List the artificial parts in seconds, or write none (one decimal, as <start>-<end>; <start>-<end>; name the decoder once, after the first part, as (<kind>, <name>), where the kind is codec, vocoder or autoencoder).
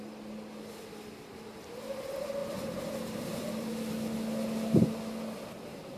2.4-3.9 (vocoder, BigVGAN v2)